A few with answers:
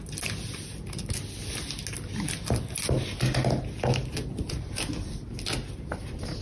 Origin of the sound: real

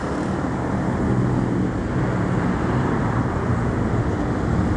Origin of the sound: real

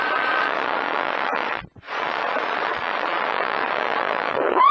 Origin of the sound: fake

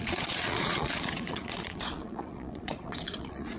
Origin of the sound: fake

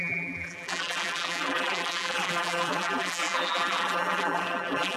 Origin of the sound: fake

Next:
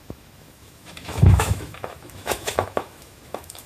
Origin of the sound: fake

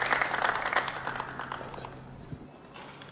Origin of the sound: real